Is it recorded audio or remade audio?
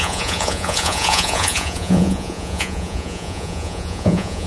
remade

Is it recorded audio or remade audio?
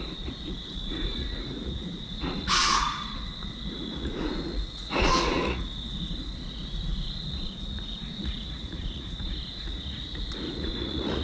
remade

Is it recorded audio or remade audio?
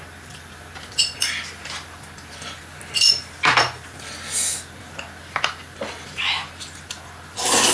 recorded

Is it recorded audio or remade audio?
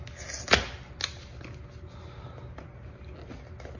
recorded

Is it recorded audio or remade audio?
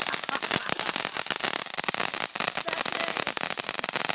recorded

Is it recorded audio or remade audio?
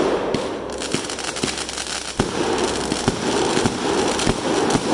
recorded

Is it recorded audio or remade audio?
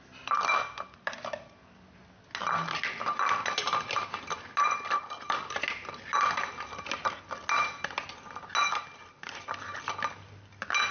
recorded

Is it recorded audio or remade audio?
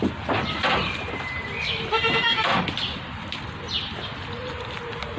recorded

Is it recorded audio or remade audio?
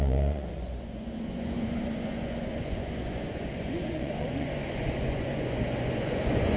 remade